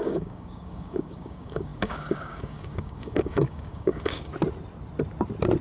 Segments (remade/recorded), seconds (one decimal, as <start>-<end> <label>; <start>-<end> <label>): 0.0-4.3 remade; 4.3-5.6 recorded